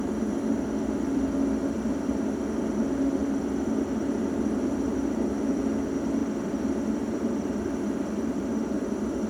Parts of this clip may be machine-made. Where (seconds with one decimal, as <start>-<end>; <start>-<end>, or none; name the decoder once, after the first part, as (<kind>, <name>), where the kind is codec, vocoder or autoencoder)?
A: 3.2-4.2 (vocoder, BigVGAN v2); 6.2-8.9